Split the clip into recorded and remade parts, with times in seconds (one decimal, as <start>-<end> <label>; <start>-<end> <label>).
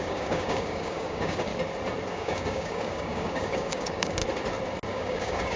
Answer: 0.0-1.5 remade; 1.5-2.1 recorded; 2.1-4.2 remade; 4.2-4.9 recorded; 4.9-5.6 remade